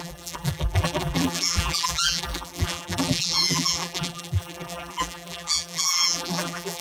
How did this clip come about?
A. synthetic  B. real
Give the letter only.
A